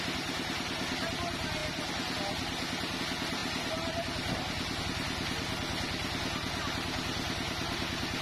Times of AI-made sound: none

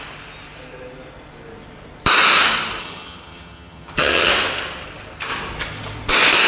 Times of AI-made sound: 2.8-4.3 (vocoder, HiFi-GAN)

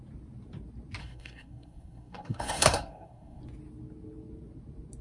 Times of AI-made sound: 1.0-3.4 (codec, SNAC)